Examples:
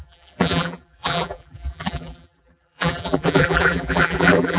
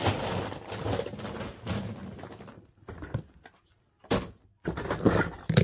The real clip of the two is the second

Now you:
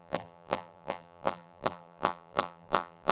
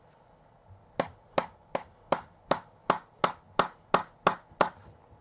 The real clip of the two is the second